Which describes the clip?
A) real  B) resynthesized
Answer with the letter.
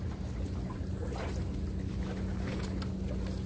A